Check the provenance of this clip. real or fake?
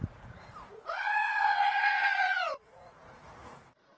fake